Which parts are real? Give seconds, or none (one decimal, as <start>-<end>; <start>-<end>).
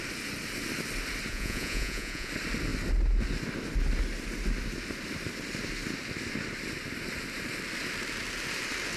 0.0-1.3; 2.3-9.0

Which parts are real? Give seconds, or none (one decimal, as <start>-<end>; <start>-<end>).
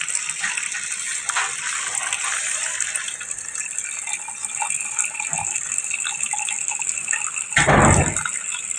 0.0-8.8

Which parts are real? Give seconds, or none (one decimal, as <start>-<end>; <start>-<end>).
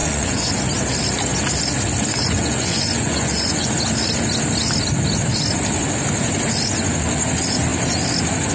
0.5-2.2; 3.7-8.5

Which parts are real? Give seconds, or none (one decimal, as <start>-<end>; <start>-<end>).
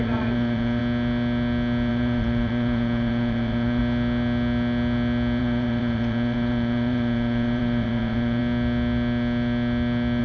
0.8-1.9; 3.8-5.4; 8.4-10.2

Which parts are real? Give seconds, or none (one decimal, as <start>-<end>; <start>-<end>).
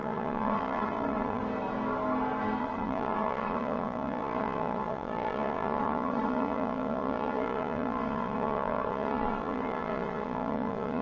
1.4-2.6